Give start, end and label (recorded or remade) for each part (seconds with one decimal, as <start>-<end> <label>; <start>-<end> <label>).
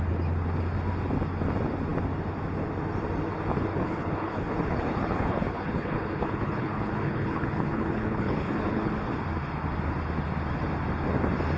0.0-3.7 recorded; 3.7-8.9 remade; 8.9-11.6 recorded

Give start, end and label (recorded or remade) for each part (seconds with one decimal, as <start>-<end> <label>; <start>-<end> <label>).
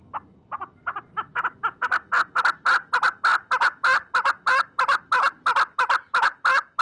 0.0-6.8 recorded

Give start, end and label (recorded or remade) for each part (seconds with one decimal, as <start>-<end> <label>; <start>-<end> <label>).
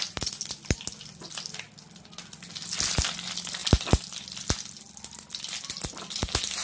0.0-6.6 recorded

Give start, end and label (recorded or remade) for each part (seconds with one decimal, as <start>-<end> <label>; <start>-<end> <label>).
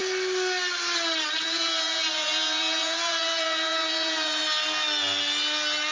0.0-1.4 recorded; 1.4-4.4 remade; 4.4-5.9 recorded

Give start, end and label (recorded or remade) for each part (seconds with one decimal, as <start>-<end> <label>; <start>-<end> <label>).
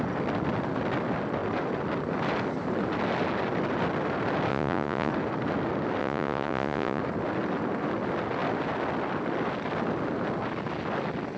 0.0-4.5 recorded; 4.5-5.1 remade; 5.1-6.0 recorded; 6.0-7.0 remade; 7.0-11.4 recorded